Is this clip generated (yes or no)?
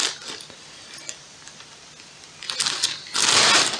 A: no